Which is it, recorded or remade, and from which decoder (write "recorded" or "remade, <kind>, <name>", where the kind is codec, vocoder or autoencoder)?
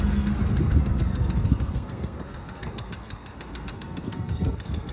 remade, codec, SNAC